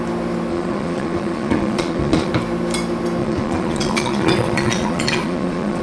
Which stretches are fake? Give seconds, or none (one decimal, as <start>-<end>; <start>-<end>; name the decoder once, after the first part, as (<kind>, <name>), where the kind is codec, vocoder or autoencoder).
0.5-2.3 (vocoder, Vocos); 3.2-5.8